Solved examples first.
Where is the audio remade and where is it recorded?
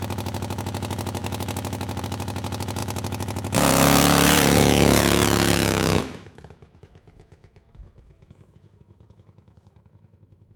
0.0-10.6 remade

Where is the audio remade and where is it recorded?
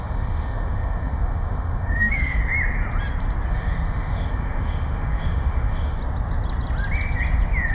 0.0-2.4 remade; 2.4-3.5 recorded; 3.5-6.0 remade; 6.0-7.7 recorded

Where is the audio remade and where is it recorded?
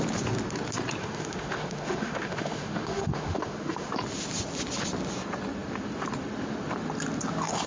0.0-1.0 recorded; 1.0-3.9 remade; 3.9-7.7 recorded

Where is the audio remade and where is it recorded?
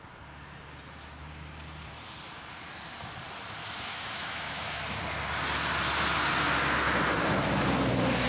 0.0-3.9 recorded; 3.9-4.8 remade; 4.8-8.3 recorded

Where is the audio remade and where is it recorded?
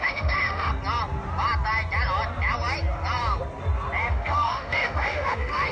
0.0-0.7 remade; 0.7-4.1 recorded; 4.1-5.7 remade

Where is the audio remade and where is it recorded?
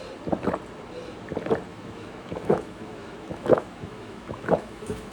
0.0-1.7 recorded; 1.7-5.1 remade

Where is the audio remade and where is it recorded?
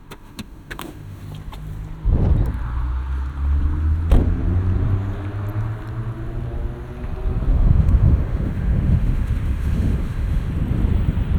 0.0-1.2 remade; 1.2-7.5 recorded; 7.5-10.5 remade; 10.5-11.4 recorded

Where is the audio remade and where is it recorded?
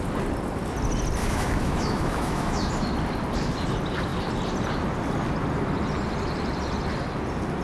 0.0-1.2 recorded; 1.2-2.7 remade; 2.7-7.6 recorded